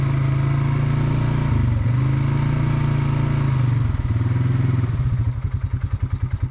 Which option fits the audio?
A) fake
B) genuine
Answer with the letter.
B